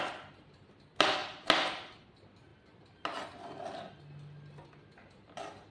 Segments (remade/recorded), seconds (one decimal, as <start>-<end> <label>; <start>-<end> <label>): 0.0-5.7 recorded

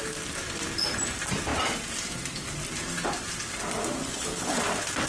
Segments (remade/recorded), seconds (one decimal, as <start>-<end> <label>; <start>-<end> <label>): 0.0-4.0 recorded; 4.0-4.6 remade; 4.6-5.1 recorded

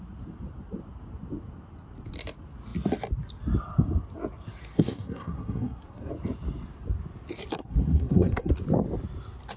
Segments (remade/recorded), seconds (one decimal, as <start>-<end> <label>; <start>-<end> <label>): 0.0-4.7 recorded; 4.7-6.1 remade; 6.1-7.6 recorded; 7.6-8.5 remade; 8.5-9.6 recorded

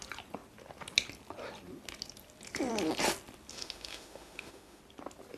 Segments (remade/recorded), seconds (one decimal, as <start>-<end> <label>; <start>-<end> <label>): 0.0-3.5 recorded; 3.5-4.8 remade; 4.8-5.4 recorded